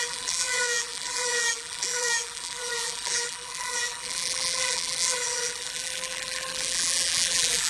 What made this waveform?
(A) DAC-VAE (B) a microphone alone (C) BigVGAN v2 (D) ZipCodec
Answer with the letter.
C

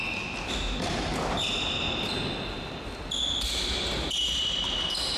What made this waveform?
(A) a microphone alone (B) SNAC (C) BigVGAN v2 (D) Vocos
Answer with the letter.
A